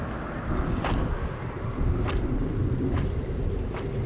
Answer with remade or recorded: recorded